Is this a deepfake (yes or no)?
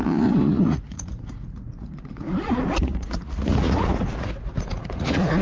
yes